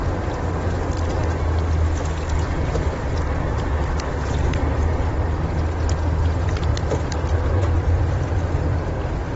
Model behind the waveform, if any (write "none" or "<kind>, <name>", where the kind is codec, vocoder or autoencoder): none